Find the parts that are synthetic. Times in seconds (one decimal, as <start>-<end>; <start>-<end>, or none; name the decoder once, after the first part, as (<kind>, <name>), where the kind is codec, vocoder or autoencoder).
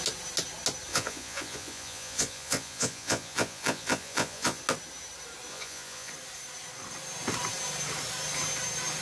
0.9-4.6 (vocoder, Vocos); 5.5-6.1